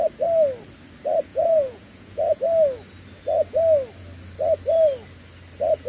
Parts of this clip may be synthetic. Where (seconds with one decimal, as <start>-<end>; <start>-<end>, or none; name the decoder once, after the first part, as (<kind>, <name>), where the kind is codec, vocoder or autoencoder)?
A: 1.3-2.4 (vocoder, Vocos)